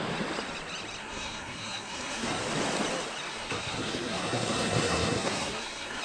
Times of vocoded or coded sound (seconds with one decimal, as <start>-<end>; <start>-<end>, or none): 1.0-2.4; 3.3-6.0